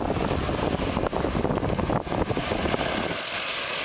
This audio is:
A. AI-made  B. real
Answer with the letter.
B